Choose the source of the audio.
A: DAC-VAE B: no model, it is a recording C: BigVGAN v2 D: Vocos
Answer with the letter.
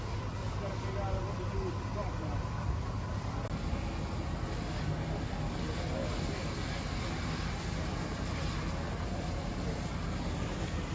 B